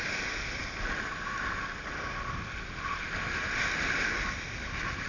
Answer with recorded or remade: recorded